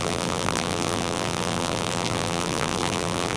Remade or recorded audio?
remade